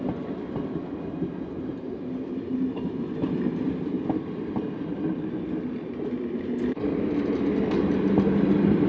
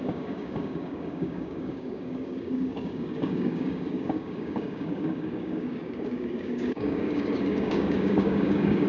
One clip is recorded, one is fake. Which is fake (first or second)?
second